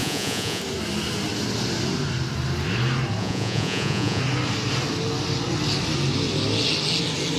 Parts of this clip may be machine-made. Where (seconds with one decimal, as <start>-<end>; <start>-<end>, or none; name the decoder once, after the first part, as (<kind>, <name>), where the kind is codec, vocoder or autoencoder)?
0.0-0.6 (vocoder, Vocos); 3.2-4.2